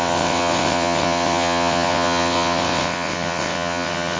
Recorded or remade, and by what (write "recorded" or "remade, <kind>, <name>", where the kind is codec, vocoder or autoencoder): remade, vocoder, WaveNeXt